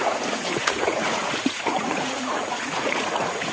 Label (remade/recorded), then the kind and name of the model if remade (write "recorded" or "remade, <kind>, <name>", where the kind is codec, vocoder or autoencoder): remade, vocoder, Vocos